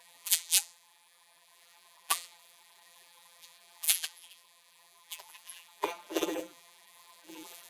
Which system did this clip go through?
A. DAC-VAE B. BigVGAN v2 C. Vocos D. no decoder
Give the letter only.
B